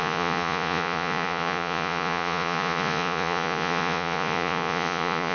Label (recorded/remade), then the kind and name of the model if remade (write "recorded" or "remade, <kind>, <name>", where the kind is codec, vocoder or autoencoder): remade, vocoder, Vocos